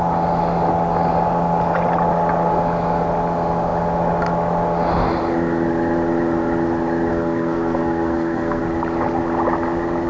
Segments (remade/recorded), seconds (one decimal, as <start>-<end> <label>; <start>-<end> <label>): 0.0-7.1 recorded; 7.1-8.6 remade; 8.6-10.1 recorded

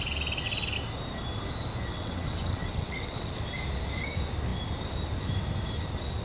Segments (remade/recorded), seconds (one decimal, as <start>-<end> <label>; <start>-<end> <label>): 0.0-1.9 recorded; 1.9-3.4 remade; 3.4-6.2 recorded

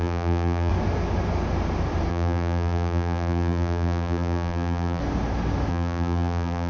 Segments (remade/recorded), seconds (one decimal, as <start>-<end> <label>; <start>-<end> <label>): 0.0-0.7 remade; 0.7-2.1 recorded; 2.1-5.0 remade; 5.0-5.7 recorded; 5.7-6.7 remade